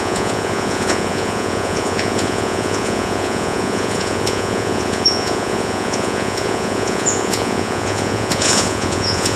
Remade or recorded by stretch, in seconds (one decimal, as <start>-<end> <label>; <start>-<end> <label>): 0.0-9.4 remade